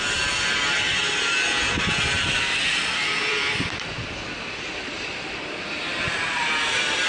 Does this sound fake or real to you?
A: fake